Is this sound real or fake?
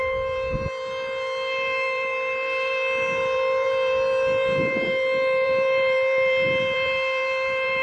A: fake